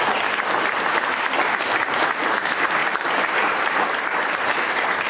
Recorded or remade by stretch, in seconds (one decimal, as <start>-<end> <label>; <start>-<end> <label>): 0.0-2.8 recorded; 2.8-5.1 remade